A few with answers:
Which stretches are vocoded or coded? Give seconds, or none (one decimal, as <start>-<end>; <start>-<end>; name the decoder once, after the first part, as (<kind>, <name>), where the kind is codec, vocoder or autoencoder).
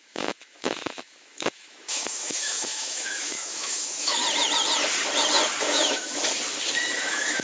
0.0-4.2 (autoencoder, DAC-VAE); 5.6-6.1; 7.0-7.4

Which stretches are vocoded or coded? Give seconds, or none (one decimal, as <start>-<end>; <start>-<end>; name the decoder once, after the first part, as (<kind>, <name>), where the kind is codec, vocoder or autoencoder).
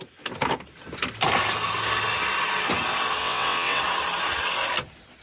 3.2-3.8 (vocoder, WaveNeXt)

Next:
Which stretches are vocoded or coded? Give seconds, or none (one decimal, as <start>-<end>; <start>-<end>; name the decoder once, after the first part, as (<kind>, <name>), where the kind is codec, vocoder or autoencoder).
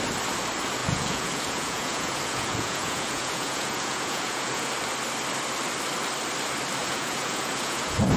0.8-4.7 (vocoder, Vocos); 6.8-8.2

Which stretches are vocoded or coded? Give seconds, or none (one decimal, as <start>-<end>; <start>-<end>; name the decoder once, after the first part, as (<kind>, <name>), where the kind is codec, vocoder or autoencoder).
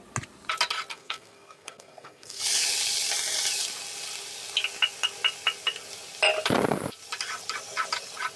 0.9-2.4 (codec, SNAC)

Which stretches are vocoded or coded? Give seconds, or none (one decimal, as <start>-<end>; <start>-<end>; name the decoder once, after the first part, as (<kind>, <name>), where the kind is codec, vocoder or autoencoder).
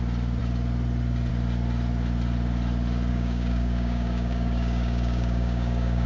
3.1-6.1 (codec, DAC)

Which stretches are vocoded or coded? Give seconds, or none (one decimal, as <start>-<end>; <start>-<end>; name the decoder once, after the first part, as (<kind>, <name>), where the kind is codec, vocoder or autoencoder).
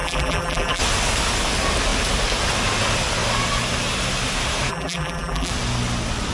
0.0-0.8 (vocoder, BigVGAN v2); 4.7-5.5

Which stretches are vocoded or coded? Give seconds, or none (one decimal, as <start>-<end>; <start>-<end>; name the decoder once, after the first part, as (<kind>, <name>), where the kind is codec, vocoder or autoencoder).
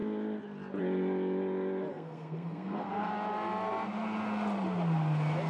1.9-3.1 (codec, SNAC)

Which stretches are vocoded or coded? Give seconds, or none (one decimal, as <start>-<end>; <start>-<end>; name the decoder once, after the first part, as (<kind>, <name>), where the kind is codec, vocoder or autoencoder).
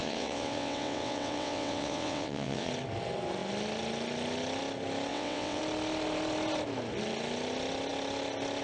0.0-2.7 (vocoder, WaveNeXt); 5.1-5.6